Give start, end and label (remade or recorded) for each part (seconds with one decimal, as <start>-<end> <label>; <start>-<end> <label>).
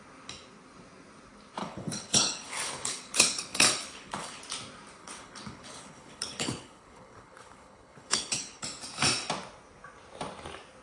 0.0-1.6 recorded; 1.6-4.4 remade; 4.4-5.0 recorded; 5.0-8.6 remade; 8.6-10.8 recorded